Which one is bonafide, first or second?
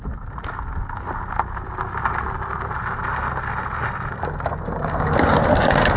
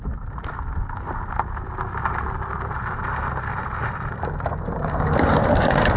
first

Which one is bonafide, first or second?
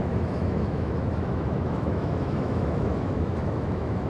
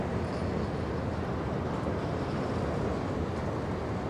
second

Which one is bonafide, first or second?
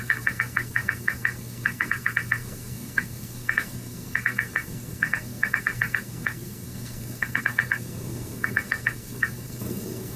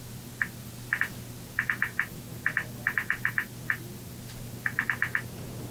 second